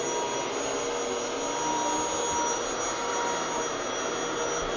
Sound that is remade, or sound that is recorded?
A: recorded